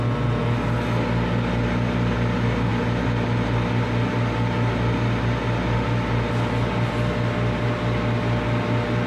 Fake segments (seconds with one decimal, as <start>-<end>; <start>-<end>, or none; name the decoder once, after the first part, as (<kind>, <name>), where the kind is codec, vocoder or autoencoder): none